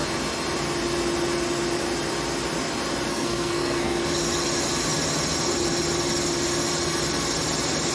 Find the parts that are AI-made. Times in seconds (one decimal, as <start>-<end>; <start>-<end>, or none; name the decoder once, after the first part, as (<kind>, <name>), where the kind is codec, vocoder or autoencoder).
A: 3.1-4.0 (codec, SNAC)